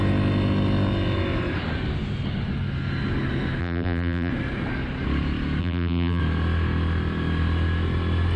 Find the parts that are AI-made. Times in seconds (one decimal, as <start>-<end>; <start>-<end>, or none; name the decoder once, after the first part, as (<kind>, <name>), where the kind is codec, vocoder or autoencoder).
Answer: 3.6-4.3 (vocoder, BigVGAN v2); 5.6-6.2